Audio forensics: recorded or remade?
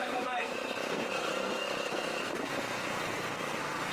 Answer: remade